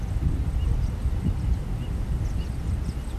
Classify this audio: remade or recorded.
recorded